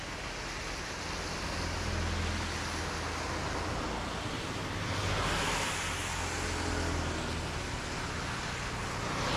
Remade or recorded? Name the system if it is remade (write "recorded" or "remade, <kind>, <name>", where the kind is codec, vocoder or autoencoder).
recorded